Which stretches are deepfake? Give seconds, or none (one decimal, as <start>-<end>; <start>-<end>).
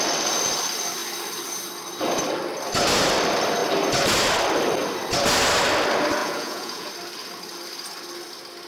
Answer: 6.2-6.9